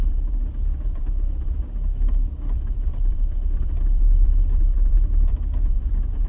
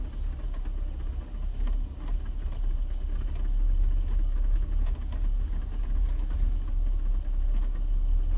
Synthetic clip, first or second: first